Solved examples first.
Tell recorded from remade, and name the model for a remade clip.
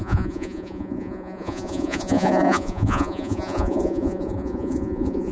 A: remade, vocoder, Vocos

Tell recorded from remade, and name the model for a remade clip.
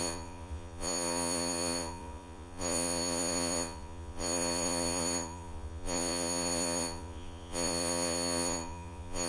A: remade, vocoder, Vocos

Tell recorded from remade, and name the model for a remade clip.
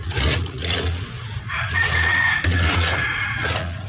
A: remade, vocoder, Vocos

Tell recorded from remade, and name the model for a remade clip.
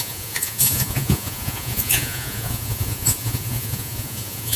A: remade, vocoder, Vocos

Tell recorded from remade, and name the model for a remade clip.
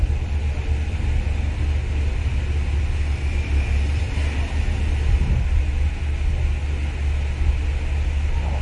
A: recorded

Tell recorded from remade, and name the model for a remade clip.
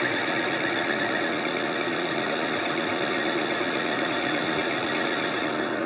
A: remade, vocoder, Vocos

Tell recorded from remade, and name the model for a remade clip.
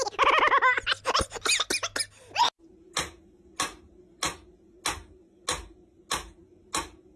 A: recorded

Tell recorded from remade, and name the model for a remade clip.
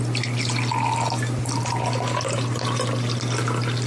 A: recorded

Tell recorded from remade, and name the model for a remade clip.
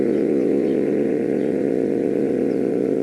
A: remade, vocoder, Vocos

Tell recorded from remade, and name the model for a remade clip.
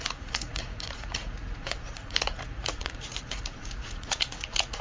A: remade, vocoder, Vocos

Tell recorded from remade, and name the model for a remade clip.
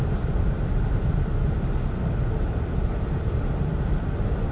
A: recorded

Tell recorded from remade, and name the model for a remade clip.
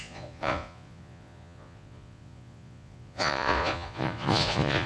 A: remade, vocoder, Vocos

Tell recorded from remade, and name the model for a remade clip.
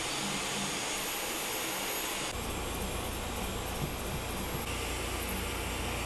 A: recorded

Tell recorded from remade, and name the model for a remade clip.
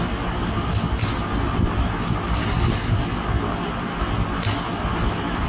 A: recorded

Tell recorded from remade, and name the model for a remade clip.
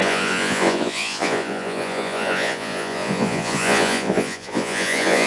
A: remade, vocoder, Vocos